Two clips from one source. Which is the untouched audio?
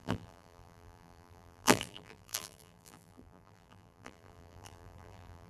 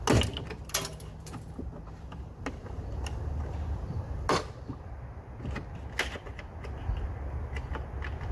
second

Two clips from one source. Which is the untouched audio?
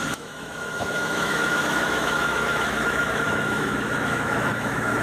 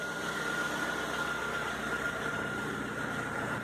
second